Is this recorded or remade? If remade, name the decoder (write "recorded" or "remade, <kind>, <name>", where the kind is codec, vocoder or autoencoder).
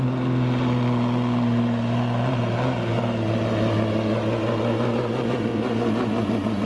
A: recorded